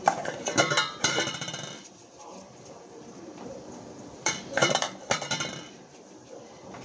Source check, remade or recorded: remade